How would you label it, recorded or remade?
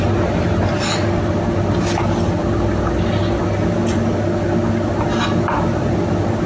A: recorded